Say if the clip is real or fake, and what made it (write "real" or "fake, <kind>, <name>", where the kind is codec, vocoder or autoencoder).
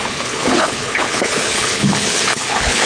fake, codec, HILCodec